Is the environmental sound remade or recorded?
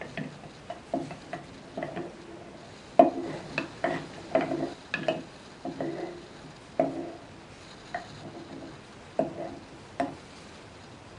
recorded